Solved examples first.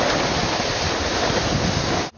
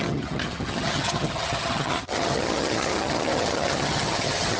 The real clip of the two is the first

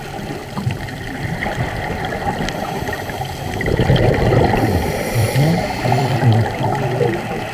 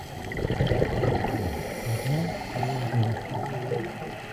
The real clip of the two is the second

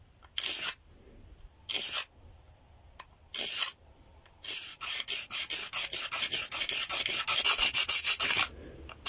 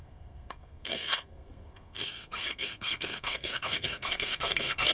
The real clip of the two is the first